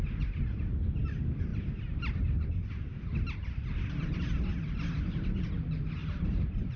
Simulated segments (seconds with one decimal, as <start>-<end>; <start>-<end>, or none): 6.0-6.8